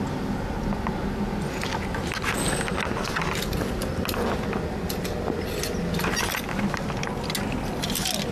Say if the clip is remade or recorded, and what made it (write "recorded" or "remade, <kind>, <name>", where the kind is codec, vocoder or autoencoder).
recorded